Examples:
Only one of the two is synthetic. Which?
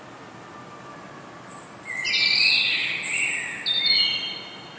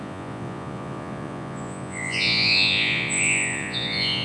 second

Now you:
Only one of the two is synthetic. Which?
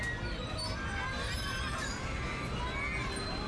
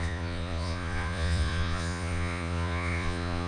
second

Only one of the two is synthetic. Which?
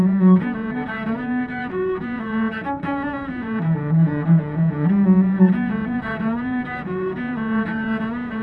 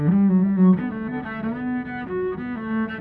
first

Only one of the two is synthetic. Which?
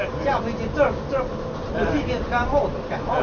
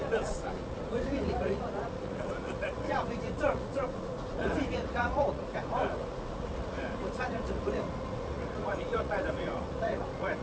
second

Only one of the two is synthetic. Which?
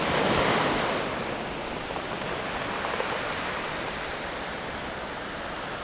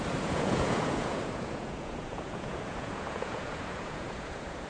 second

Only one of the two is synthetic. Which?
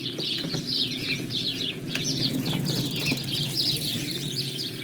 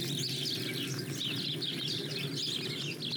first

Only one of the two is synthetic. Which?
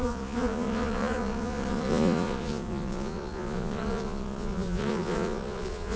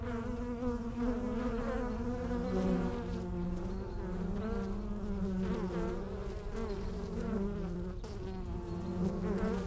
first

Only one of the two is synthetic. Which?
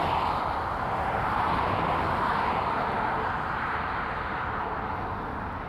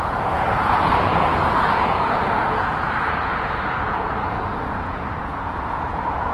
second